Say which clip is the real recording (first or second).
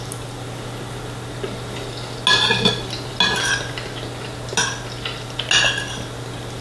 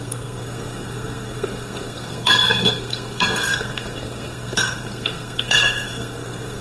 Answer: first